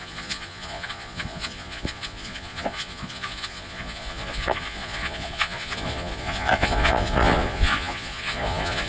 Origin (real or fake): fake